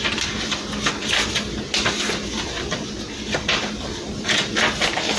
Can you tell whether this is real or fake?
real